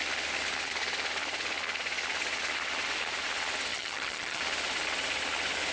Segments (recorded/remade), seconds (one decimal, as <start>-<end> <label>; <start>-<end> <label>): 0.0-3.7 recorded; 3.7-4.4 remade; 4.4-5.7 recorded